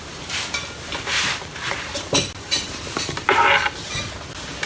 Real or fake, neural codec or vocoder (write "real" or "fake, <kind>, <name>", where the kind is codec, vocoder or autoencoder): real